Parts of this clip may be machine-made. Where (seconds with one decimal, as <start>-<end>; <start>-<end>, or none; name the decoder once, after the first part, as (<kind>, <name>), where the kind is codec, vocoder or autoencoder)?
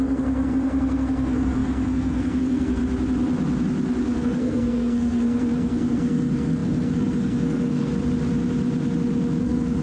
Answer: 0.0-2.8 (codec, SNAC); 4.2-7.9; 9.4-9.8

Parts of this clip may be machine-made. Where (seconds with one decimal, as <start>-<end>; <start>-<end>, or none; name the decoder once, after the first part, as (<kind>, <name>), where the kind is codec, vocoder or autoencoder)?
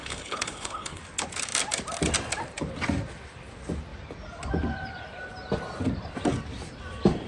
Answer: 0.0-1.0 (codec, HILCodec)